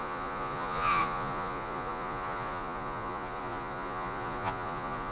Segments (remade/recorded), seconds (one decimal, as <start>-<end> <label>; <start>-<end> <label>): 0.0-5.1 remade

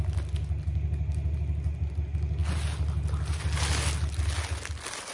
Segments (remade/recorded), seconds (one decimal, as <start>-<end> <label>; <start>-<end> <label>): 0.0-5.1 recorded

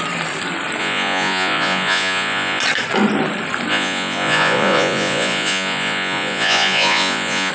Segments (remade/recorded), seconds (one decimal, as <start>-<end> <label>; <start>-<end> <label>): 0.0-0.8 recorded; 0.8-2.6 remade; 2.6-3.7 recorded; 3.7-7.5 remade

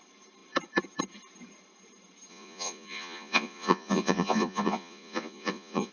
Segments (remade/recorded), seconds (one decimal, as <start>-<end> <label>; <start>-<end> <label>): 0.0-2.3 recorded; 2.3-5.9 remade